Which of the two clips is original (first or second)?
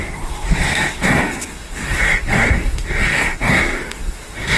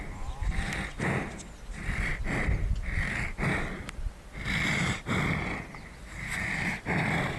second